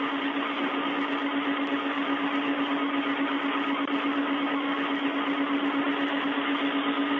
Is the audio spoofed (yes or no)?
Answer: no